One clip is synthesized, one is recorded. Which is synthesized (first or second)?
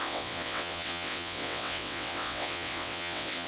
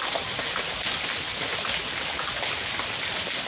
first